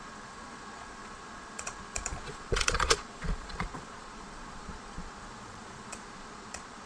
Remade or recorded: remade